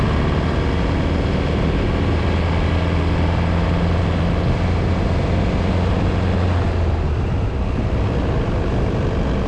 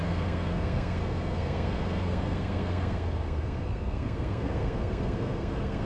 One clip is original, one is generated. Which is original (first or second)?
first